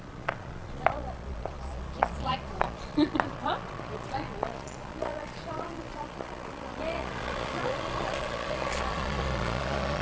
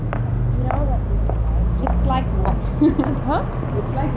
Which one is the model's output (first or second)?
first